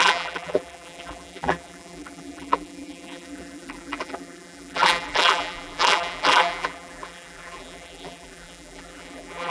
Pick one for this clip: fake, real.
fake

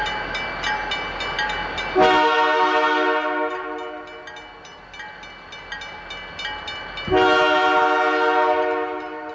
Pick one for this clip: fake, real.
real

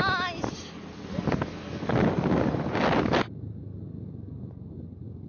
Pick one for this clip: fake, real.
real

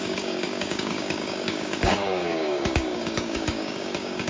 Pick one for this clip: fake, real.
fake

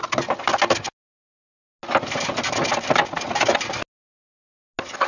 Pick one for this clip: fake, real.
real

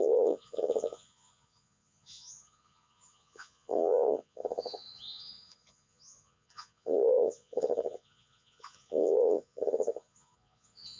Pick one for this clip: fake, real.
fake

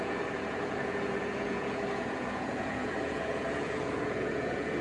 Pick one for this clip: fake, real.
fake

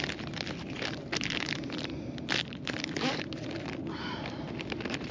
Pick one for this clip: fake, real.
real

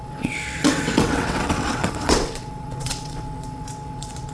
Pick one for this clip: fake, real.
fake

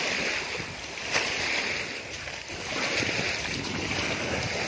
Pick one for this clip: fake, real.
real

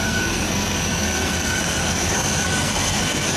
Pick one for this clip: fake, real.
fake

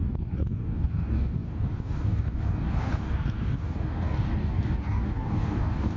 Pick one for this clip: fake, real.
fake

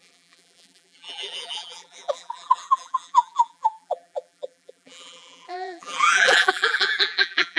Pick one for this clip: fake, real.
fake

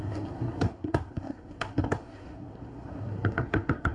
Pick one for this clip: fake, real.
fake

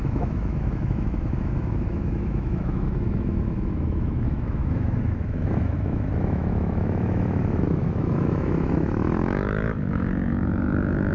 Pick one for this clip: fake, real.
fake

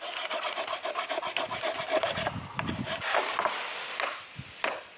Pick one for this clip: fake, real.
real